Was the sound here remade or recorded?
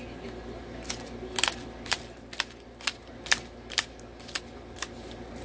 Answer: recorded